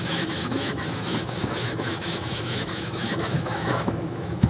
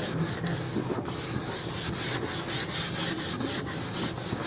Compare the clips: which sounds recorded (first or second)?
second